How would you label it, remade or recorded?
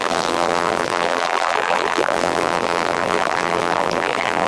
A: remade